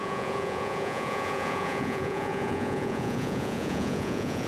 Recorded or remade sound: remade